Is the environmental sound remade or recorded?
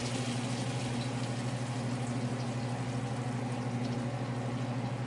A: recorded